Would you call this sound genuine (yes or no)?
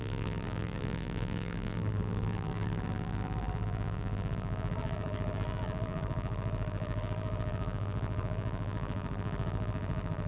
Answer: no